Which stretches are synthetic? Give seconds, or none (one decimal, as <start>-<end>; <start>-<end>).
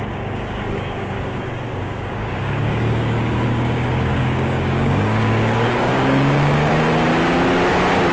0.0-6.7